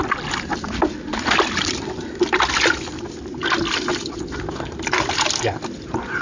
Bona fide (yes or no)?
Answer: yes